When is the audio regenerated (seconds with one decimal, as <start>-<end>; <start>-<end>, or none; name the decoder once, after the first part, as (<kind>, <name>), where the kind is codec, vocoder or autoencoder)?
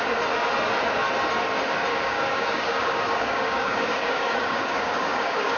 1.9-5.6 (codec, DAC)